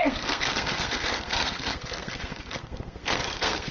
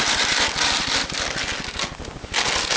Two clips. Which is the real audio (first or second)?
second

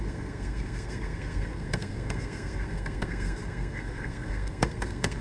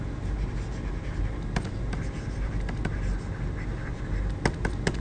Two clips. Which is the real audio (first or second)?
second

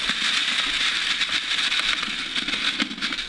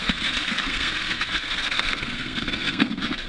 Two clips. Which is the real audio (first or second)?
first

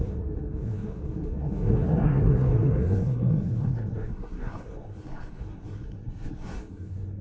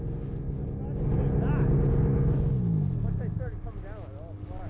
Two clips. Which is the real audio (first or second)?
second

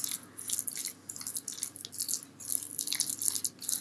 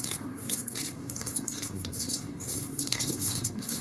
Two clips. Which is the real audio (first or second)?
first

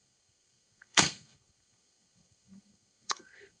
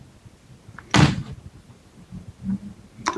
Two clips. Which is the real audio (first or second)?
second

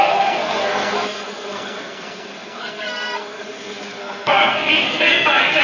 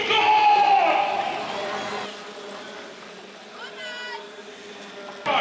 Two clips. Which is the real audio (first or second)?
second